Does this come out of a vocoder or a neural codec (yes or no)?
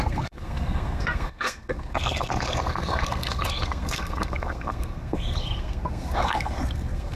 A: yes